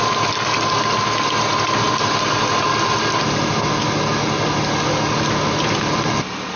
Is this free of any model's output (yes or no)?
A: yes